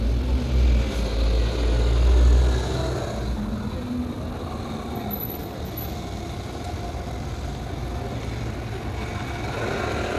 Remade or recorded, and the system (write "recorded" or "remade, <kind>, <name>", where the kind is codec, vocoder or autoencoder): recorded